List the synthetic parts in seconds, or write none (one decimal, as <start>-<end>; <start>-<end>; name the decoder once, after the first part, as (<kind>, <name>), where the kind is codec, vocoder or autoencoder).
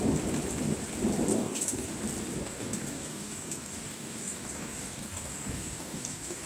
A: 1.3-1.9 (codec, DAC); 2.4-6.5